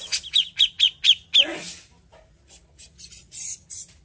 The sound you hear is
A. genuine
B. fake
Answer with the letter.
A